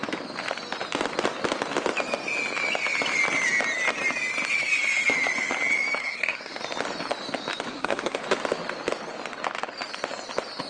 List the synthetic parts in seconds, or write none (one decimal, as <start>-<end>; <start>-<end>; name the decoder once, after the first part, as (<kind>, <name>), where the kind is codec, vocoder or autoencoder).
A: 6.0-6.6 (codec, SNAC); 7.7-8.2